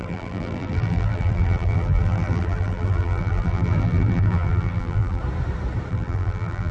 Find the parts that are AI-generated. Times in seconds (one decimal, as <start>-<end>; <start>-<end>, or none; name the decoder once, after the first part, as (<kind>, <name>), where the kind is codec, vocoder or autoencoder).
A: 0.0-5.2 (vocoder, BigVGAN v2); 5.9-6.7